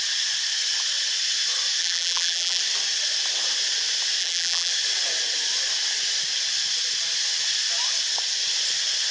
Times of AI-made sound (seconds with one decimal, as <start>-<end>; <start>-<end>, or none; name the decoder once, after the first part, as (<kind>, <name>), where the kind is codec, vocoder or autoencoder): 1.8-2.6 (vocoder, BigVGAN v2); 4.2-4.7